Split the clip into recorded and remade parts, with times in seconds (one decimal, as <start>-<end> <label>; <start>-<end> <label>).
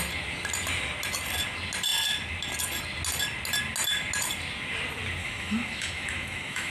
0.0-5.2 recorded; 5.2-6.7 remade